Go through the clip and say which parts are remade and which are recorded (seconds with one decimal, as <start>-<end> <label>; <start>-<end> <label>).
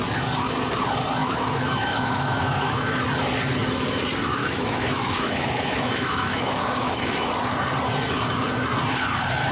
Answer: 0.0-1.2 recorded; 1.2-3.0 remade; 3.0-4.4 recorded; 4.4-7.3 remade; 7.3-9.5 recorded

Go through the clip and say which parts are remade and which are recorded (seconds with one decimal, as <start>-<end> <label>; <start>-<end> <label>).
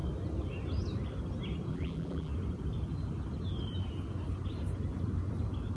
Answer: 0.0-1.7 recorded; 1.7-2.3 remade; 2.3-5.8 recorded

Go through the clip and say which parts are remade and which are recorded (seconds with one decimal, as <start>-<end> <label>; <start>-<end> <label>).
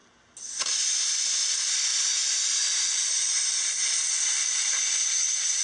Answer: 0.0-5.6 recorded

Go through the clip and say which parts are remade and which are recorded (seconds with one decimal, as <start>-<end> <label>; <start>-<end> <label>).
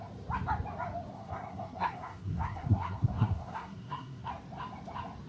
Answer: 0.0-1.1 recorded; 1.1-4.3 remade; 4.3-5.3 recorded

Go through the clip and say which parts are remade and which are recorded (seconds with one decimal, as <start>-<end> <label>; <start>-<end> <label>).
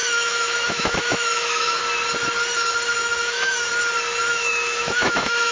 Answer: 0.0-1.8 remade; 1.8-3.0 recorded; 3.0-3.7 remade; 3.7-4.3 recorded; 4.3-5.5 remade